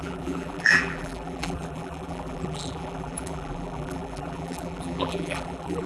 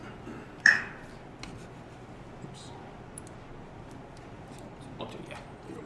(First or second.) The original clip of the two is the second